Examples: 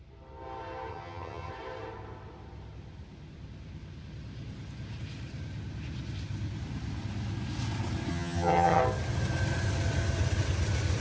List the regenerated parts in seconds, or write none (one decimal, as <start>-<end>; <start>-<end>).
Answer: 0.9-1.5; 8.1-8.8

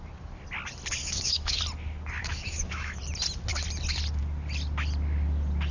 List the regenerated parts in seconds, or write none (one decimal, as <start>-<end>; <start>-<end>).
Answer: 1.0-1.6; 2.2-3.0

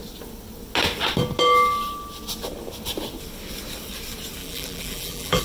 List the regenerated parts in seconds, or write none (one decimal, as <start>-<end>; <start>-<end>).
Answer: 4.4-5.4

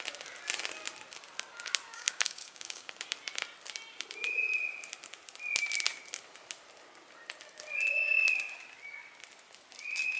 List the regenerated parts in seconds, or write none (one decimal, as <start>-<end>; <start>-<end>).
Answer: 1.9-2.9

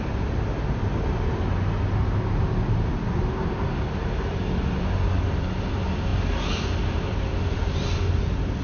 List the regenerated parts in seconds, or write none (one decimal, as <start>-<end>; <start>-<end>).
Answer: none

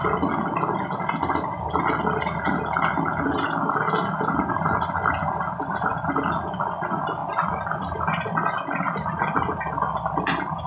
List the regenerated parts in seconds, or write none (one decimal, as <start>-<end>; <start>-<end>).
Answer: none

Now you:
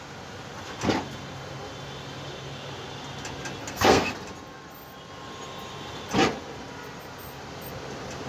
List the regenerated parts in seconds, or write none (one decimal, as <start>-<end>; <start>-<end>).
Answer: 3.6-4.1